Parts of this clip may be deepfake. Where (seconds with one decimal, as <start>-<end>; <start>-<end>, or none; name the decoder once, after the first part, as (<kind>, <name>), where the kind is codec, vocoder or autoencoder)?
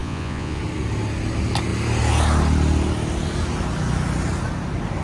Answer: 0.0-0.6 (vocoder, Vocos)